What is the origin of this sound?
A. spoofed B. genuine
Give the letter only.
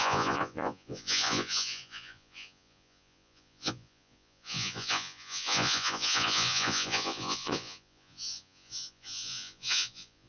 A